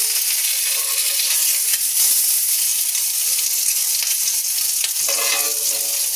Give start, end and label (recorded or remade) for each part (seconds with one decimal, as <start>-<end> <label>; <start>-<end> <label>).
0.0-6.2 recorded